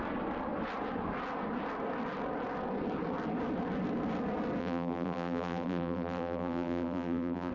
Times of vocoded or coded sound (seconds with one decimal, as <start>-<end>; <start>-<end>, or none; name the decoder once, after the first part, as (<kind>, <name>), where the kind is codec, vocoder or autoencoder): 4.6-7.5 (vocoder, BigVGAN v2)